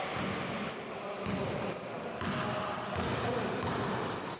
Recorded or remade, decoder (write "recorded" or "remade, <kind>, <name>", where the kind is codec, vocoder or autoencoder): recorded